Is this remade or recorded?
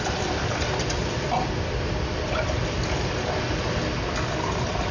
recorded